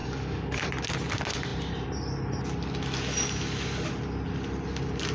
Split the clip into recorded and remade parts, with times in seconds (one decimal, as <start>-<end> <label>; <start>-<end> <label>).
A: 0.0-0.7 remade; 0.7-5.1 recorded